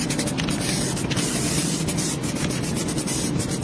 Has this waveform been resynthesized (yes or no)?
no